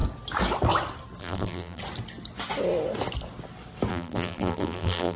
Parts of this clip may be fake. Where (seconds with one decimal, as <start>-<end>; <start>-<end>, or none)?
1.2-1.8; 3.9-5.2